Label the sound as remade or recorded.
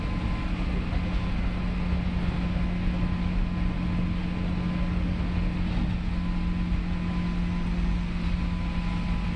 recorded